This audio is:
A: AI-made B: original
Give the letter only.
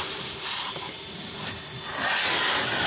B